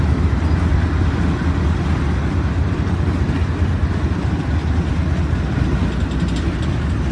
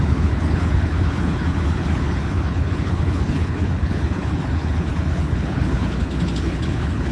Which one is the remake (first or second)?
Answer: second